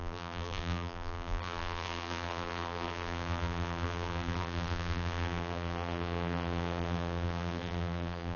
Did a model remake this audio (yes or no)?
yes